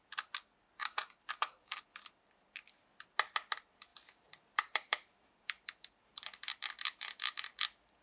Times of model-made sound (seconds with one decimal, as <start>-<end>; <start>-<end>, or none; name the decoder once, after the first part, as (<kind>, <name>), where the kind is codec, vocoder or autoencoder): 0.8-1.8 (vocoder, BigVGAN v2); 3.9-7.6